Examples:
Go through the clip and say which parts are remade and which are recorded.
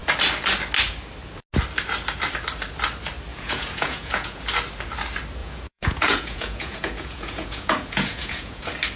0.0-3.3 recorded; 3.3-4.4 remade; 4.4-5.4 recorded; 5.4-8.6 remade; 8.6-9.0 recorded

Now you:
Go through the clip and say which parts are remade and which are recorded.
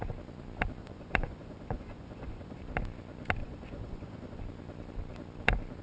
0.0-0.8 recorded; 0.8-2.6 remade; 2.6-3.4 recorded; 3.4-4.4 remade; 4.4-5.8 recorded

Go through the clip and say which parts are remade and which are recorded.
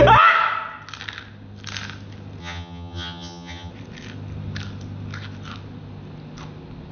0.0-2.4 recorded; 2.4-3.7 remade; 3.7-6.9 recorded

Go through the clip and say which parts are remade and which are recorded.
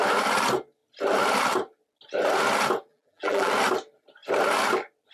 0.0-2.9 recorded; 2.9-3.5 remade; 3.5-5.1 recorded